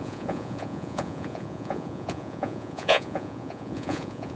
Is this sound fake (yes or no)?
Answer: yes